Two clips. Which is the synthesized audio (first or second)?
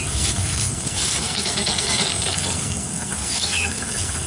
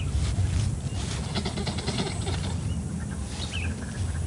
first